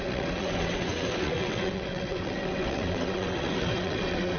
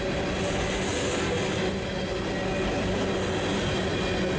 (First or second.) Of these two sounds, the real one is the second